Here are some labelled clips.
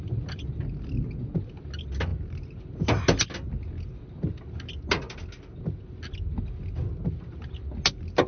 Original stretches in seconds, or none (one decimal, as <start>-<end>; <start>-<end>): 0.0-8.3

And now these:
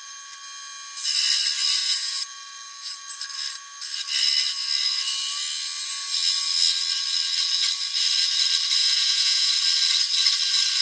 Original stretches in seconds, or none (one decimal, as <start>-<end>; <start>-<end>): 0.0-1.8; 3.1-8.8; 9.5-10.8

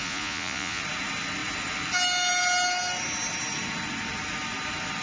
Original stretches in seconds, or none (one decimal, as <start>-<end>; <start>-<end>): 0.8-5.0